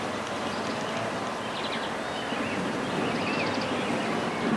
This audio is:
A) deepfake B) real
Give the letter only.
B